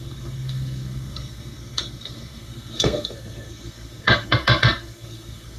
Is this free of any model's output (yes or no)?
no